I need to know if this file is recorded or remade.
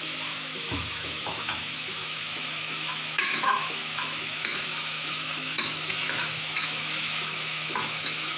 remade